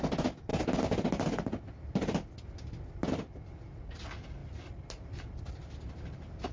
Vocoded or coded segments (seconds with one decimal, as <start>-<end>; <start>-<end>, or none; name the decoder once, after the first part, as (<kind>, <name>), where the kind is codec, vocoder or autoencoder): none